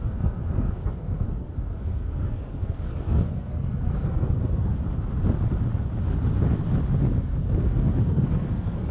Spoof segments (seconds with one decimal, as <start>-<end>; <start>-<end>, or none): 0.0-4.7; 7.2-8.9